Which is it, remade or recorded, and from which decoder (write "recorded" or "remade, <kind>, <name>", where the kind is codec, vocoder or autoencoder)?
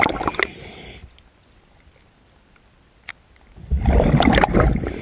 recorded